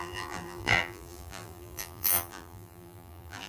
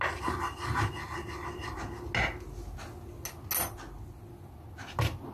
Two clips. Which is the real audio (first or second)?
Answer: second